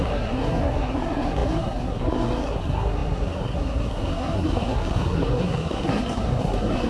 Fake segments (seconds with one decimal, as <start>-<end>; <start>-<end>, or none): 0.0-6.9